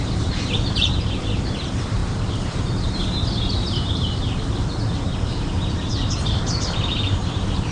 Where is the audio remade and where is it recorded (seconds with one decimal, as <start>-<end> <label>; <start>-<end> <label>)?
0.0-2.0 remade; 2.0-6.3 recorded; 6.3-7.7 remade